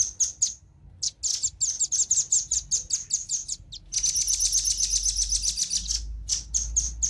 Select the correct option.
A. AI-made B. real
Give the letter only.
B